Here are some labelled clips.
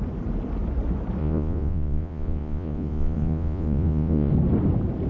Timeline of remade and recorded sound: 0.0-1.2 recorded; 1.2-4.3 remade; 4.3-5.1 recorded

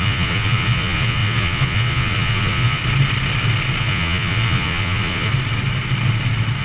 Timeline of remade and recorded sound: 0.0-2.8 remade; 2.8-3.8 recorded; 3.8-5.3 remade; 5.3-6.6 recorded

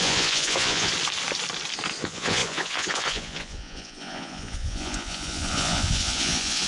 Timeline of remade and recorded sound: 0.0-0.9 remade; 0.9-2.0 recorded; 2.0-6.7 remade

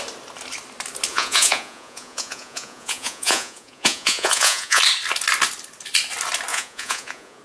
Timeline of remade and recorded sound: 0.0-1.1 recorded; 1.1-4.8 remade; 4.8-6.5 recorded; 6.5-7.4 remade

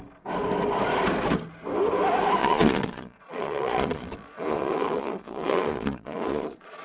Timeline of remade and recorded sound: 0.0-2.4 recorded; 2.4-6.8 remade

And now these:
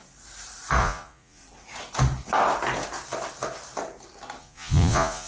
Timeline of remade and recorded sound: 0.0-0.8 recorded; 0.8-1.4 remade; 1.4-4.4 recorded; 4.4-5.3 remade

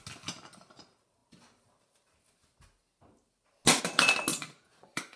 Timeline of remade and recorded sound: 0.0-4.3 recorded; 4.3-5.2 remade

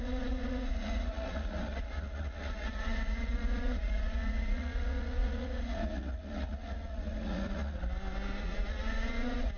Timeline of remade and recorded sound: 0.0-7.8 remade; 7.8-8.4 recorded; 8.4-9.6 remade